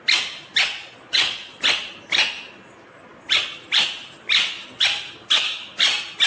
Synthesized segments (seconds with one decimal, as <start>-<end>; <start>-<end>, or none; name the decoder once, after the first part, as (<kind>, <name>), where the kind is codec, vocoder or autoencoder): 0.7-1.6 (vocoder, Vocos)